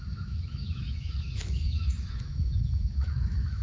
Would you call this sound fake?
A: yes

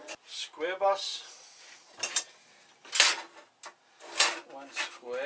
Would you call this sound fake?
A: no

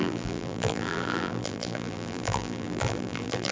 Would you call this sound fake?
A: yes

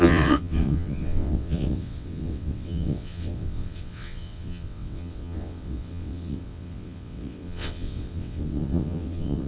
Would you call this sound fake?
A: yes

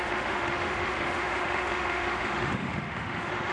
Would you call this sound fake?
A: yes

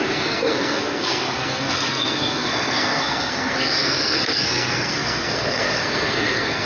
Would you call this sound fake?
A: yes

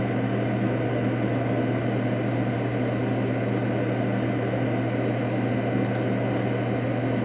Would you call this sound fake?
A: no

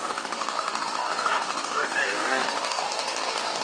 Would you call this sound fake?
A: yes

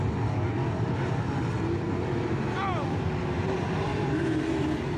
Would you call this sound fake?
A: yes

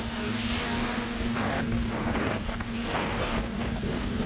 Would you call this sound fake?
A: yes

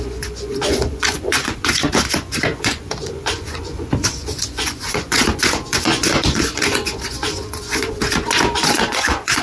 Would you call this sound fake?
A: yes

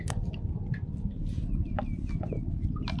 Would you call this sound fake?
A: no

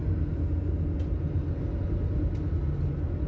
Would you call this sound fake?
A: no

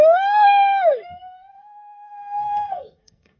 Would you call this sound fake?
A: yes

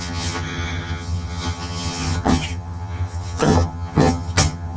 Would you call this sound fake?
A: yes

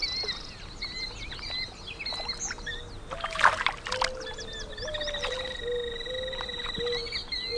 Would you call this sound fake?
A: no